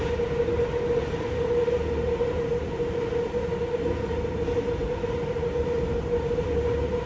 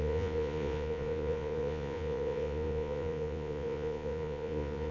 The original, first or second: first